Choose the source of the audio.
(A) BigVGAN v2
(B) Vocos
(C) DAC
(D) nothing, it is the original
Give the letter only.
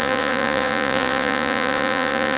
B